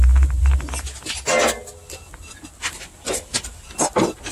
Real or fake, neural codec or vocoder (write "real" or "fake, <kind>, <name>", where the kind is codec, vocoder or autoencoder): real